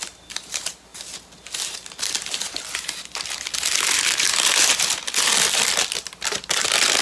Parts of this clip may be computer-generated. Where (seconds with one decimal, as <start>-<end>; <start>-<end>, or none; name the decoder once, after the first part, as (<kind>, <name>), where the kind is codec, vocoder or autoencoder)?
none